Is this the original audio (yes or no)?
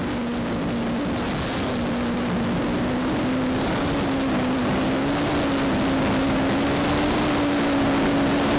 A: yes